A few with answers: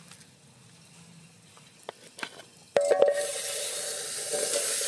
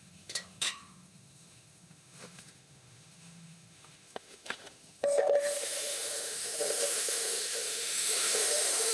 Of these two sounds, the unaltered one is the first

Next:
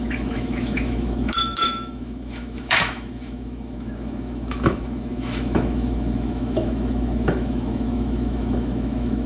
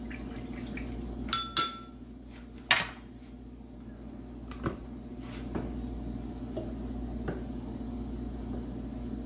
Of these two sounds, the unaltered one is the second